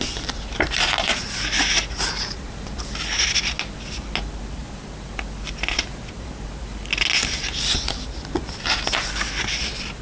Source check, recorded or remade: recorded